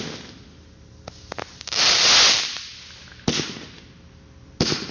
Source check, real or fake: real